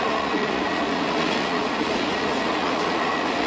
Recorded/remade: remade